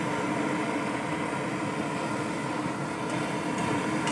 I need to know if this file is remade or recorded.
recorded